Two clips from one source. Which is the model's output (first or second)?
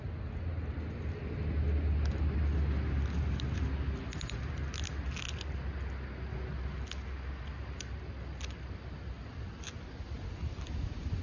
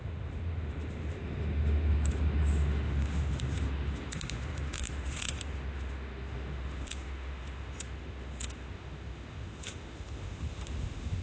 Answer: second